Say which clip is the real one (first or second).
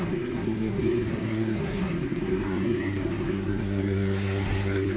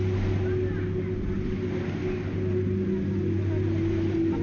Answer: second